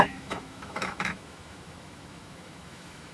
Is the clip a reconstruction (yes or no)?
yes